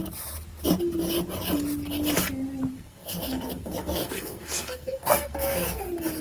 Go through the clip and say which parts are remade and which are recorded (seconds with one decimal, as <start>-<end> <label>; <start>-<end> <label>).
0.0-2.7 recorded; 2.7-5.8 remade; 5.8-6.2 recorded